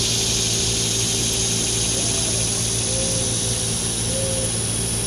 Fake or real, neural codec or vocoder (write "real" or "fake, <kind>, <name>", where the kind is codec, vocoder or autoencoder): real